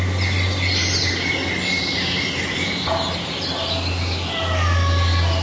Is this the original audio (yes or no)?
yes